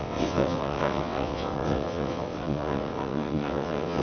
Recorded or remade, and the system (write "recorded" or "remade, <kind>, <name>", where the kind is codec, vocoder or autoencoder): remade, vocoder, WaveNeXt